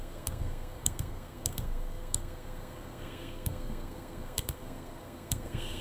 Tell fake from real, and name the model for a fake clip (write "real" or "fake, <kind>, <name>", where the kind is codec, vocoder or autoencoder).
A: fake, codec, SNAC